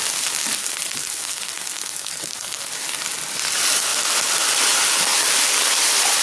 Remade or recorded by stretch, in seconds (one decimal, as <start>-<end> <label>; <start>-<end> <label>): 0.0-0.6 recorded; 0.6-2.7 remade; 2.7-6.2 recorded